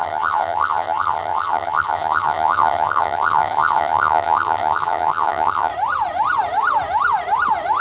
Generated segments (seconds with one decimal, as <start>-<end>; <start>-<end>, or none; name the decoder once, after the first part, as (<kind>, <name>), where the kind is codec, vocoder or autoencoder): 0.0-5.7 (vocoder, HiFi-GAN)